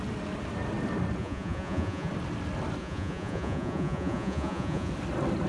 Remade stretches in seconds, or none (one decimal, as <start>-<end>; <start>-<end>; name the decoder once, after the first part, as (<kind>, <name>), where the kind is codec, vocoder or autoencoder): 1.2-2.1 (vocoder, Vocos); 2.8-4.9